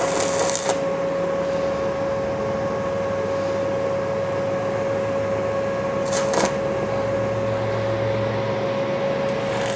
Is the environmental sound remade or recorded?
recorded